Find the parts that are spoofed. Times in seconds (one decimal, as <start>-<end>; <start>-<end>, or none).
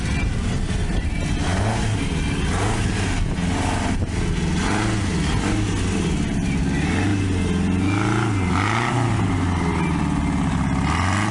none